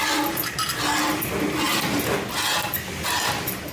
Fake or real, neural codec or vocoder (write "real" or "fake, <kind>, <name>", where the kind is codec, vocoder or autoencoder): real